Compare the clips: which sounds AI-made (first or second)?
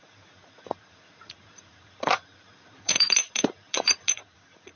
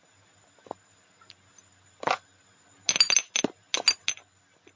first